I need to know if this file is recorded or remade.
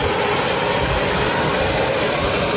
recorded